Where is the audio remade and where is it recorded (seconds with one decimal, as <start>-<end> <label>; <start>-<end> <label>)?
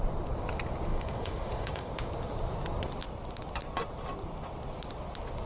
0.0-0.9 recorded; 0.9-1.9 remade; 1.9-5.5 recorded